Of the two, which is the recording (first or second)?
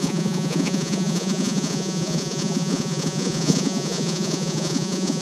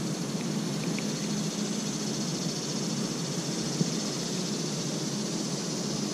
second